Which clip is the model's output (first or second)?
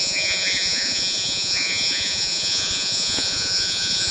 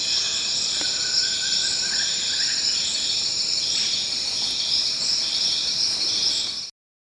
first